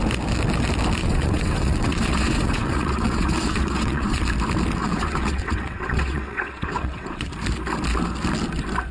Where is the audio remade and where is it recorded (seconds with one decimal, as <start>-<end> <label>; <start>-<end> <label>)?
0.0-1.0 recorded; 1.0-4.2 remade; 4.2-4.8 recorded; 4.8-7.3 remade; 7.3-8.9 recorded